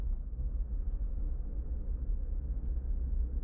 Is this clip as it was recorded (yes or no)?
yes